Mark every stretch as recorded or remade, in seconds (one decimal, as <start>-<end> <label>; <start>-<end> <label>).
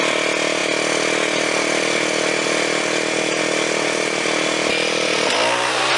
0.0-6.0 recorded